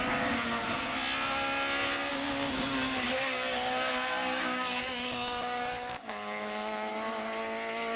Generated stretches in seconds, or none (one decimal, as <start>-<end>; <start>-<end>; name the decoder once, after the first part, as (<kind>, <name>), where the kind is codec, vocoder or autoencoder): 2.1-6.9 (codec, DAC)

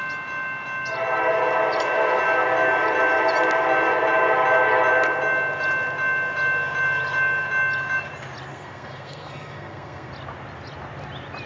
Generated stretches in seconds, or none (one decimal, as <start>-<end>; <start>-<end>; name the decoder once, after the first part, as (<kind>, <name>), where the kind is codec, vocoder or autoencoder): 8.5-10.1 (codec, SNAC)

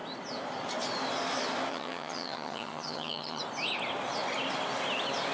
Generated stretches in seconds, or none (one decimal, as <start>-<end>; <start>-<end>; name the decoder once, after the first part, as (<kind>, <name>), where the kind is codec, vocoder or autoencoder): 1.7-3.4 (vocoder, HiFi-GAN)

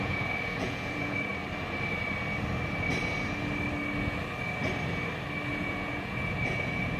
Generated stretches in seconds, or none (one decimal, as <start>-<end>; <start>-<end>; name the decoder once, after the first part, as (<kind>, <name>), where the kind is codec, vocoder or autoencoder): 0.0-1.3 (vocoder, Vocos); 5.5-7.0

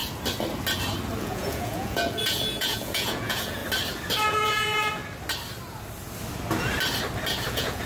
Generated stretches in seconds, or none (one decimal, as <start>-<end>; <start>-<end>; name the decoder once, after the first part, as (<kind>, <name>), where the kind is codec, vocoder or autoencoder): 1.2-3.6 (vocoder, Vocos); 4.3-5.0; 7.5-7.9